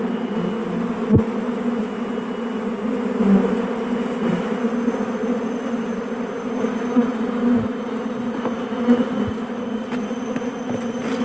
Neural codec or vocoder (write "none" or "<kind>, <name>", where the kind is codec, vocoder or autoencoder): none